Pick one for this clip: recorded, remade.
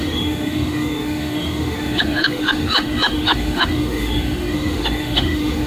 remade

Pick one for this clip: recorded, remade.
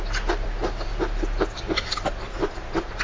recorded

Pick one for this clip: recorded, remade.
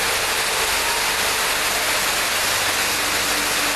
recorded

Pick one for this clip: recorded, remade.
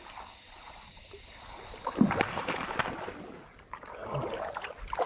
recorded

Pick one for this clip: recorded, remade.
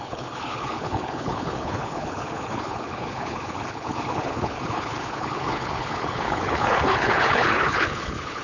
remade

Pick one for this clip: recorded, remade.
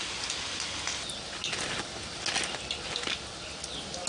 recorded